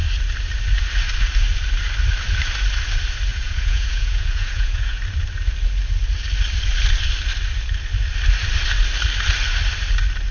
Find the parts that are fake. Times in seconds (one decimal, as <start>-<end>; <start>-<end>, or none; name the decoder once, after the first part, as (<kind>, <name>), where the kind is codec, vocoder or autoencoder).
3.3-5.0 (vocoder, Vocos)